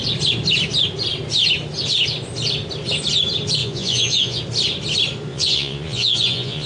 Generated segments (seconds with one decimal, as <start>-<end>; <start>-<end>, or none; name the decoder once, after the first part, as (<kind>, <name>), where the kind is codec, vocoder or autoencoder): 3.6-4.4 (vocoder, Vocos); 5.3-6.7